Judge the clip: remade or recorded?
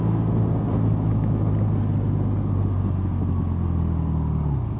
recorded